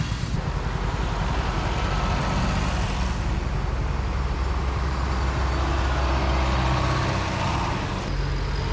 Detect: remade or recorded recorded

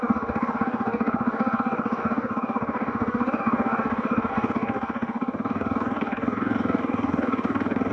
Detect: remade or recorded remade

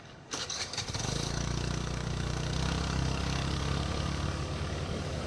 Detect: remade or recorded remade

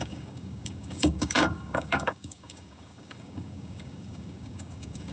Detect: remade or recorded remade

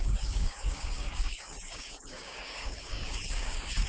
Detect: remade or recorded remade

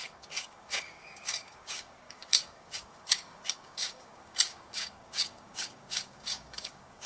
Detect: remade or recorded remade